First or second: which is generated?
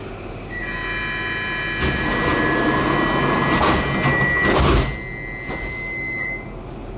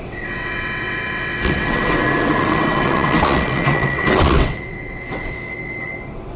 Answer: second